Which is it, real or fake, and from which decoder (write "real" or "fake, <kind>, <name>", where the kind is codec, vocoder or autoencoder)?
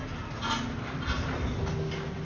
real